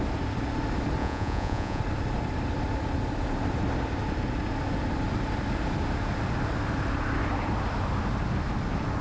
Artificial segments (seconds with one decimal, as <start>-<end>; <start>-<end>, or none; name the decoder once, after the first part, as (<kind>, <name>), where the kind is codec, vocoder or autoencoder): 1.0-1.8 (vocoder, Vocos)

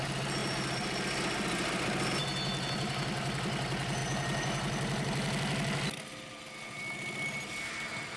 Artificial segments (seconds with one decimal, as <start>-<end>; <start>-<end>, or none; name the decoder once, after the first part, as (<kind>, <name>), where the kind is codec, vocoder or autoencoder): none

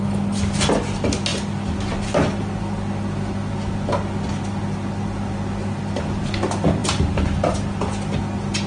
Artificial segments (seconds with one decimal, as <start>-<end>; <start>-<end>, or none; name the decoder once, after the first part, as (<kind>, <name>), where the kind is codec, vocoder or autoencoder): none

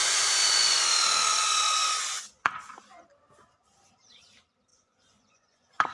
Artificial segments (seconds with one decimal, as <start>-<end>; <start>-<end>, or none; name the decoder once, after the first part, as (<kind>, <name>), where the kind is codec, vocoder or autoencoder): 0.0-0.8 (vocoder, Vocos); 1.3-2.5; 4.7-5.9

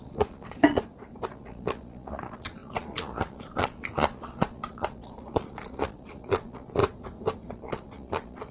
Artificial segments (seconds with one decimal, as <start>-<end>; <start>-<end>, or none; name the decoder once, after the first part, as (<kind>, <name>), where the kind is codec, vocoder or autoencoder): 0.0-0.8 (vocoder, Vocos); 1.3-6.8; 7.5-8.5

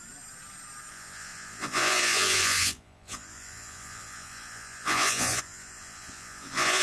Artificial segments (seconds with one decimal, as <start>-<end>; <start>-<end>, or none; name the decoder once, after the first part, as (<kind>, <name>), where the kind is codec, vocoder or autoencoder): 0.9-6.8 (vocoder, Vocos)

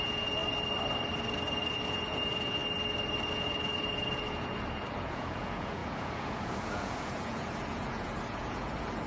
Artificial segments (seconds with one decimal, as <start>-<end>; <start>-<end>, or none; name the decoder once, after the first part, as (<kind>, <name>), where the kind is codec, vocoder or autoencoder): 0.0-0.4 (vocoder, Vocos); 1.7-2.6; 3.3-9.1